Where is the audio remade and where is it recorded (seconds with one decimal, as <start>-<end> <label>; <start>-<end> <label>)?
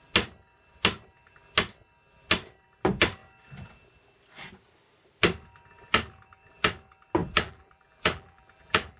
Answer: 0.0-7.2 recorded; 7.2-9.0 remade